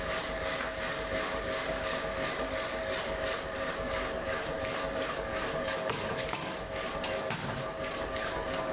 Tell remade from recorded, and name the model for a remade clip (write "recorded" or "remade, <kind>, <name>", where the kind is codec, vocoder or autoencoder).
remade, codec, DAC